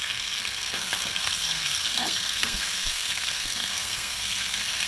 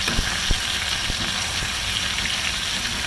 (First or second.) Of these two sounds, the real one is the second